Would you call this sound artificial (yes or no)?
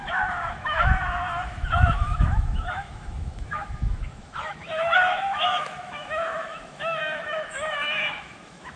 yes